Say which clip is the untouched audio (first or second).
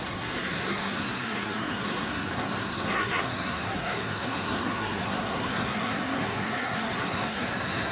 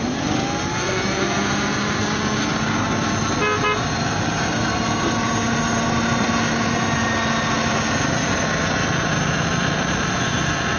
second